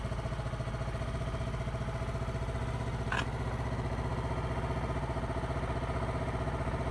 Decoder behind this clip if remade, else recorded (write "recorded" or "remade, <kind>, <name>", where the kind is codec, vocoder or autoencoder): recorded